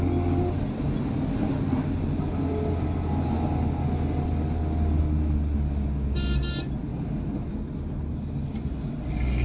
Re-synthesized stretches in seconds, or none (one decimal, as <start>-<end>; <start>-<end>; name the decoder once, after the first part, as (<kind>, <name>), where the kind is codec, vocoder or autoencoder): none